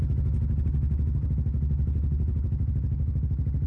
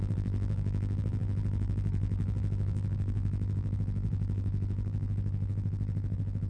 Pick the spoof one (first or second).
second